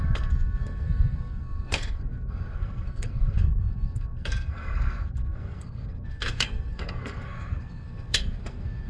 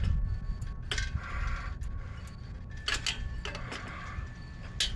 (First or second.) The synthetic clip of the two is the first